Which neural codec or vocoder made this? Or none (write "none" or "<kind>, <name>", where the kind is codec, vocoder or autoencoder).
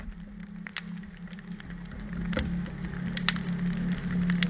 none